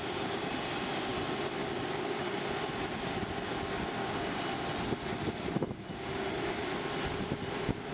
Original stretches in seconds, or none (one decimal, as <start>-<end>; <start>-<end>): 0.0-7.9